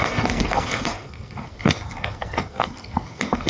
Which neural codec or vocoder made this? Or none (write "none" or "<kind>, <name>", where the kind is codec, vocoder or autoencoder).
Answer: codec, SNAC